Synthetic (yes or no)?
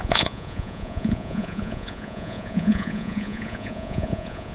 yes